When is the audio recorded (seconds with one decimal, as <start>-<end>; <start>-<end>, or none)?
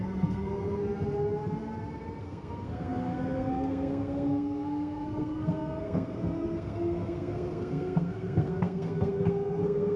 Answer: 0.8-2.2